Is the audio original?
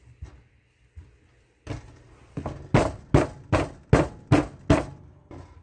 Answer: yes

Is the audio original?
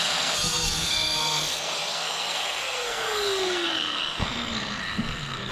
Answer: no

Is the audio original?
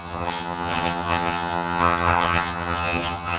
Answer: no